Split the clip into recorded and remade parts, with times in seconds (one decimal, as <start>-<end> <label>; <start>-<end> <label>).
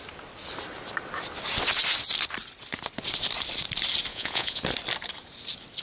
0.0-4.1 recorded; 4.1-4.6 remade; 4.6-5.8 recorded